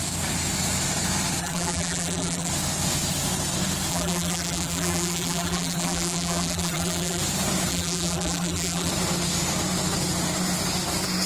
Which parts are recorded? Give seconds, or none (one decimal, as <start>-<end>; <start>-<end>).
0.0-1.4; 2.5-3.9; 7.2-7.7; 8.9-11.3